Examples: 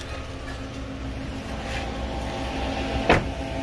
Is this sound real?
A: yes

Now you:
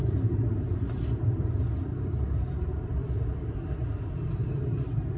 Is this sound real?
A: no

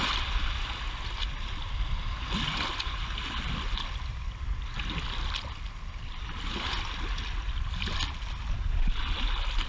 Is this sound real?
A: yes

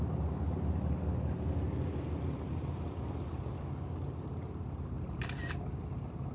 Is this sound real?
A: yes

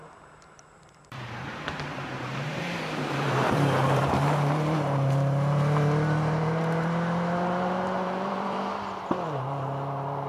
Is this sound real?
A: no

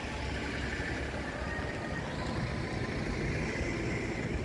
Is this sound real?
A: yes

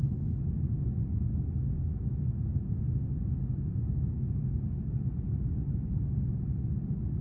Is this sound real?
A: yes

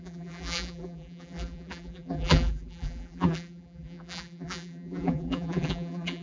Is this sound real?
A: no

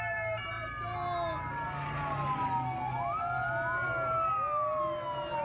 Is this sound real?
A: yes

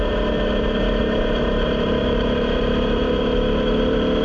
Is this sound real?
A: no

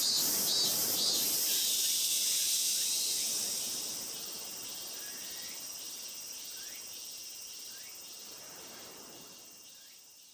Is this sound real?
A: no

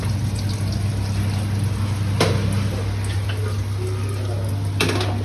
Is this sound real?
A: yes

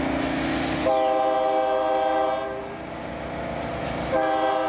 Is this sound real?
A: yes